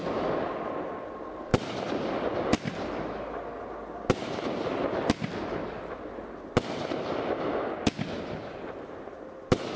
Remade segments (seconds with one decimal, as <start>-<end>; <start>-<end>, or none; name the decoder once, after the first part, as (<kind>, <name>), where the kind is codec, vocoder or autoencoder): none